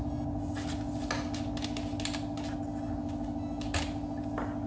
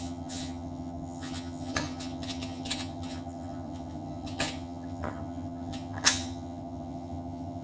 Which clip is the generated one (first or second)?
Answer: second